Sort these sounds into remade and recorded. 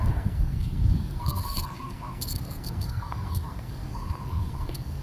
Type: remade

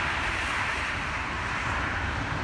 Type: remade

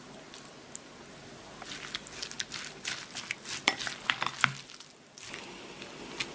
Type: recorded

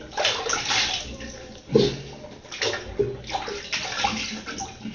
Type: recorded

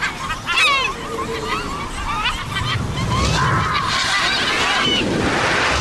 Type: recorded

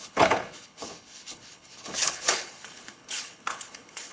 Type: remade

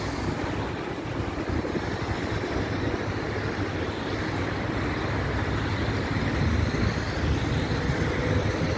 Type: recorded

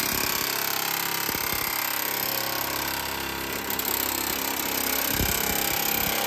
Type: recorded